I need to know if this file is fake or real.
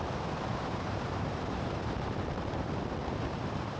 fake